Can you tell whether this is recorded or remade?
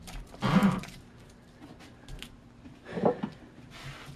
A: recorded